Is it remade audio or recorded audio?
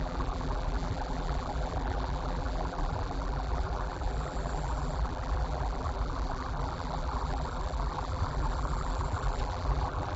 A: remade